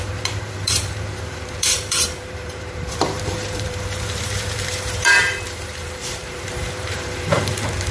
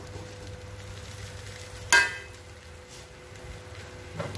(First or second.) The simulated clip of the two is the first